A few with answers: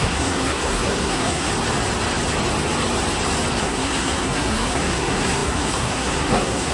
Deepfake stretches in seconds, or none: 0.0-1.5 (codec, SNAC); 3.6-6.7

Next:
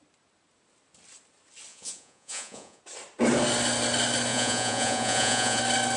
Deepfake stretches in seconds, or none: 1.7-2.8 (vocoder, Vocos); 4.3-5.6

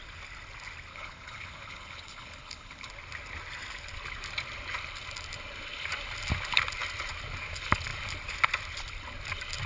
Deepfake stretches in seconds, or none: 0.9-2.9 (codec, HILCodec)

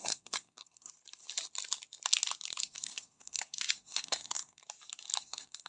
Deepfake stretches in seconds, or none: 0.0-0.9 (codec, SNAC); 2.6-4.6; 5.2-5.7

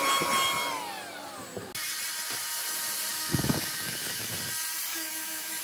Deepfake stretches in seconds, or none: 3.1-4.3 (codec, DAC); 4.9-5.6

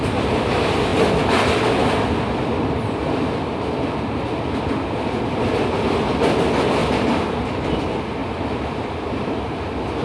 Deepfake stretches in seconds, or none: 6.8-7.8 (vocoder, BigVGAN v2); 8.2-9.6